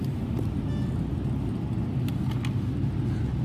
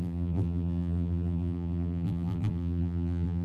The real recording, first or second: first